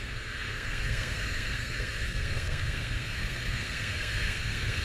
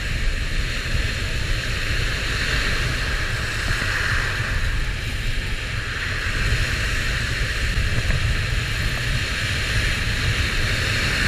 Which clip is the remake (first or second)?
first